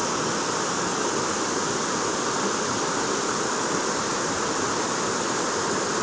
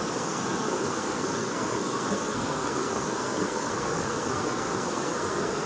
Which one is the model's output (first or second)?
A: second